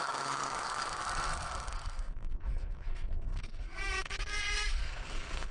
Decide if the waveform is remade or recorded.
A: remade